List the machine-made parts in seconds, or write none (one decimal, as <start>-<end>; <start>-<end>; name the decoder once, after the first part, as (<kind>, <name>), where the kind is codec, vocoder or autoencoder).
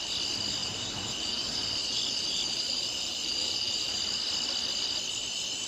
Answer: 0.6-4.0 (vocoder, BigVGAN v2)